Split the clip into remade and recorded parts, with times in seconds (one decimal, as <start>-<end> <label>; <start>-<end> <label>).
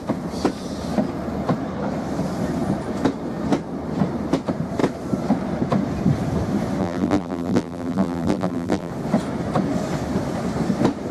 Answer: 0.0-6.8 recorded; 6.8-8.9 remade; 8.9-11.1 recorded